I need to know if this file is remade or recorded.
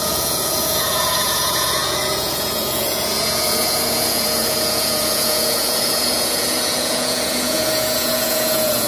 remade